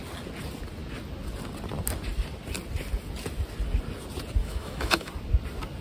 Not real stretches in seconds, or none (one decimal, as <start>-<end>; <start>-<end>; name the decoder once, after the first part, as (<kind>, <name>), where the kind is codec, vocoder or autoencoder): 4.4-5.1 (autoencoder, DAC-VAE)